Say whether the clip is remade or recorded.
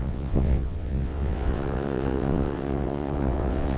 remade